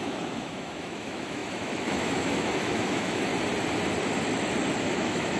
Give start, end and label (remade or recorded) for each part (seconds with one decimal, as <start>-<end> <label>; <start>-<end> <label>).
0.0-3.3 remade; 3.3-4.8 recorded; 4.8-5.4 remade